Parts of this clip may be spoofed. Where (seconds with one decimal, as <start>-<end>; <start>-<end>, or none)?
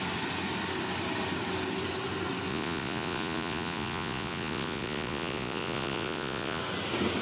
2.5-6.6